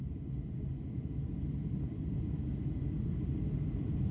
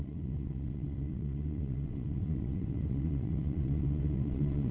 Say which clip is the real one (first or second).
first